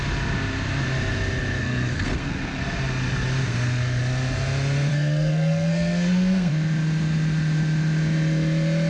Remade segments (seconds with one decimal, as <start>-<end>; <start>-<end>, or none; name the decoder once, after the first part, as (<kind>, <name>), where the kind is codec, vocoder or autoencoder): 1.6-2.6 (codec, SNAC); 3.4-4.0; 4.9-6.5